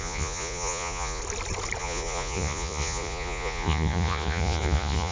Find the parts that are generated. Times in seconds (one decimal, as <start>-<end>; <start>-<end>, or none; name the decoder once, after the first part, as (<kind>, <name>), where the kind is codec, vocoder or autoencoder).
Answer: 0.0-1.2 (vocoder, Vocos); 1.8-5.1